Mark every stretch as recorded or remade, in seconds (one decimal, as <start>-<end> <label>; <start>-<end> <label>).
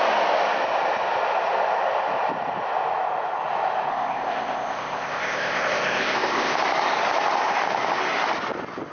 0.0-3.9 recorded; 3.9-6.5 remade; 6.5-8.9 recorded